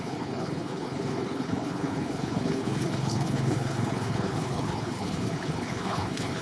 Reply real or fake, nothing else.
fake